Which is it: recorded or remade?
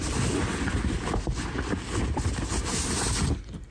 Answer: recorded